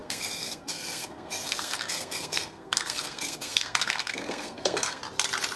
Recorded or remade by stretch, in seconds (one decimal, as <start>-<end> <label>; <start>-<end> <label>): 0.0-5.0 remade; 5.0-5.6 recorded